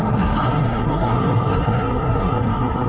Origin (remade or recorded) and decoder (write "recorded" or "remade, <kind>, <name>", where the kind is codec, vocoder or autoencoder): remade, codec, SNAC